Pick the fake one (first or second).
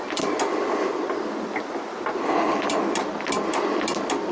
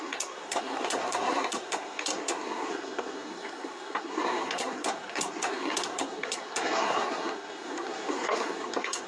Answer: second